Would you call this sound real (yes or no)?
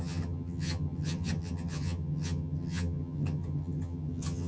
no